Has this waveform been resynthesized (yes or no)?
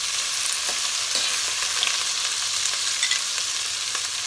no